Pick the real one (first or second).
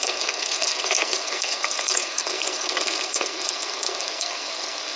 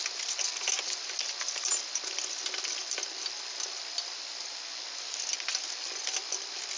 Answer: second